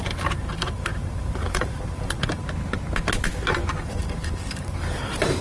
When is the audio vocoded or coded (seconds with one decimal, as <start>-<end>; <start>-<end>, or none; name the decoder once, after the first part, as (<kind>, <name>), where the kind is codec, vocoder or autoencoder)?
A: 0.0-2.4 (vocoder, BigVGAN v2); 3.8-5.4